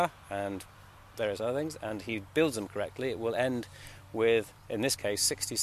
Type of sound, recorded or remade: recorded